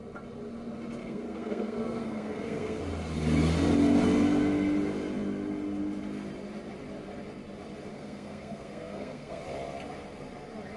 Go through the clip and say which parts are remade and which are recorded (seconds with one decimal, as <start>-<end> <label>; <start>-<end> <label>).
0.0-1.0 recorded; 1.0-2.8 remade; 2.8-7.9 recorded; 7.9-9.4 remade; 9.4-10.8 recorded